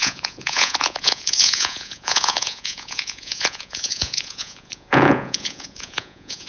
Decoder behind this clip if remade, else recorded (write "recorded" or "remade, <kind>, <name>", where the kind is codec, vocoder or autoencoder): remade, vocoder, Vocos